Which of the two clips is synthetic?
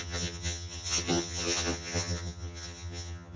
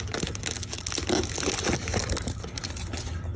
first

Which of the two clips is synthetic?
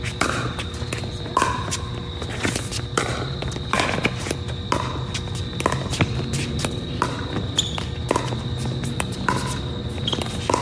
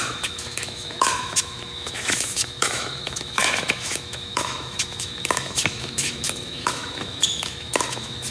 second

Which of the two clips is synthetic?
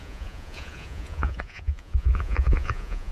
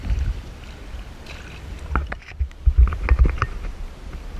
first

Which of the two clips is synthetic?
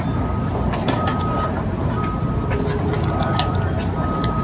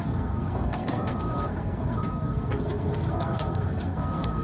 second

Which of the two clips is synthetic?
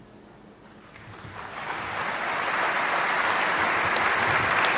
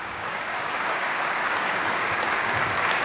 second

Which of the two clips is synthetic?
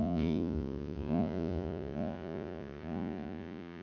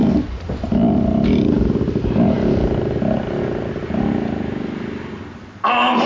first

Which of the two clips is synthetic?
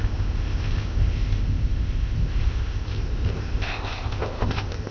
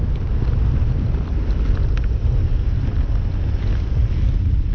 first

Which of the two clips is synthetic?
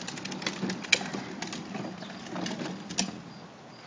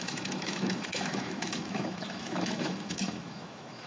second